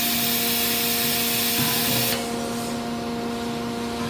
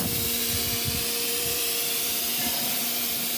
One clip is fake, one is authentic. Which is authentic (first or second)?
first